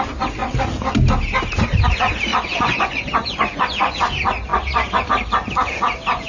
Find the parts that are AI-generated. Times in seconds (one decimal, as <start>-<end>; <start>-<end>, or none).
2.3-4.0